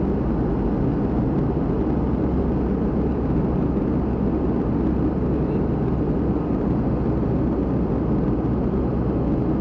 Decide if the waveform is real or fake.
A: real